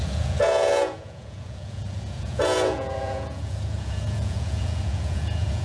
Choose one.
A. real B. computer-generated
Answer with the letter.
B